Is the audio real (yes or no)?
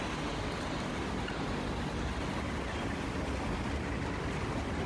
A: yes